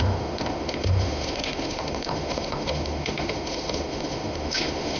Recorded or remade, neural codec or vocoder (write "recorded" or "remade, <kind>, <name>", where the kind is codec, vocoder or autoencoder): remade, autoencoder, DAC-VAE